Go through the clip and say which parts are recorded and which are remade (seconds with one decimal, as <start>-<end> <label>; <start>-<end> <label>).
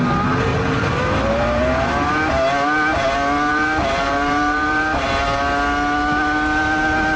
0.0-0.5 recorded; 0.5-1.6 remade; 1.6-3.5 recorded; 3.5-5.0 remade; 5.0-7.2 recorded